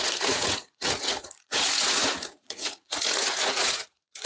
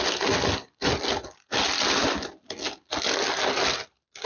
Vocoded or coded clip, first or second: first